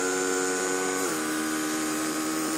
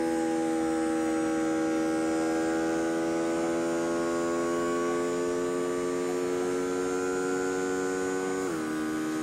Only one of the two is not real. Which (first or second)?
first